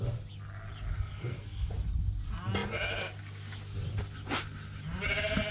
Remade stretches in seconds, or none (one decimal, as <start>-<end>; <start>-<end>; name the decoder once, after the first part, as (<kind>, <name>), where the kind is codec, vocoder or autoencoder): 0.9-1.7 (codec, SNAC)